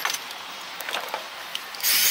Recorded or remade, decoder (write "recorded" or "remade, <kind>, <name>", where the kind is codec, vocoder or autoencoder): remade, vocoder, BigVGAN v2